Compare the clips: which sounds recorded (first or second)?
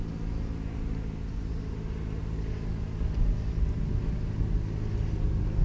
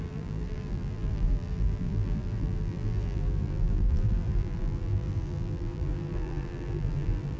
first